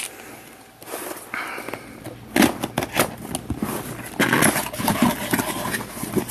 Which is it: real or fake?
real